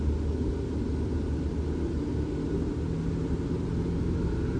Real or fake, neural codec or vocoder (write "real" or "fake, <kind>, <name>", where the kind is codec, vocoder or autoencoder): real